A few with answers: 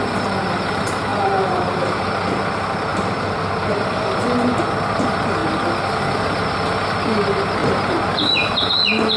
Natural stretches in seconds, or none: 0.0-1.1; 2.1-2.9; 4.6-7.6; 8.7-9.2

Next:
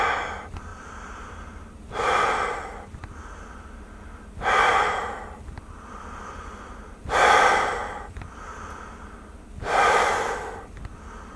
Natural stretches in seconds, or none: 0.0-0.7; 1.7-11.4

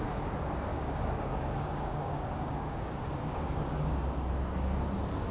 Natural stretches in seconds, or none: 0.0-0.7; 3.9-5.3

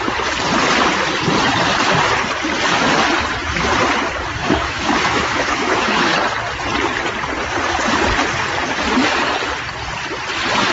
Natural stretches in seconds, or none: 0.0-4.4; 6.1-10.7

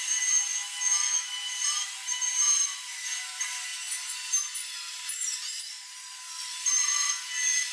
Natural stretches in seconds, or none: 0.5-1.5; 3.7-5.0

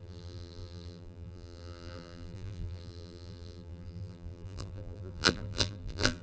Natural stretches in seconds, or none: none

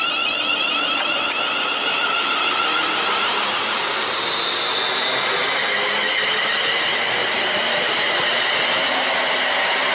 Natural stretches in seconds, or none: 0.0-1.8; 3.4-7.2; 8.4-9.9

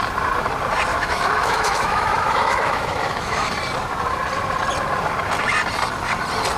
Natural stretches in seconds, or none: 0.0-0.9; 3.5-6.6